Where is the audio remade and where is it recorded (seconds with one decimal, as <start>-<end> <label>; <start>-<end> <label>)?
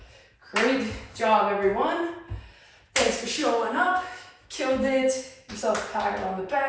0.0-3.4 recorded; 3.4-5.5 remade; 5.5-6.7 recorded